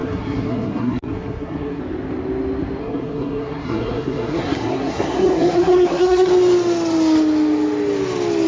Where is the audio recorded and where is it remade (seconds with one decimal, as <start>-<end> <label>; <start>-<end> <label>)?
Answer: 0.0-1.8 remade; 1.8-2.8 recorded; 2.8-6.3 remade; 6.3-8.5 recorded